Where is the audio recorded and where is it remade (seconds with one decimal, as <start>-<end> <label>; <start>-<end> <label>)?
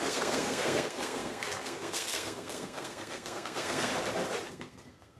0.0-3.9 remade; 3.9-4.5 recorded; 4.5-5.2 remade